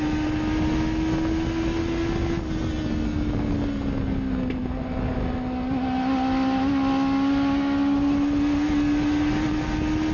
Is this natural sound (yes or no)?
yes